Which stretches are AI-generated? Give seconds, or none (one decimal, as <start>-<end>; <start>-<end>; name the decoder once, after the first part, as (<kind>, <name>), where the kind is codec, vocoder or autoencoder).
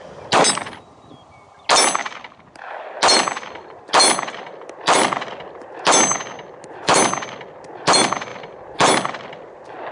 none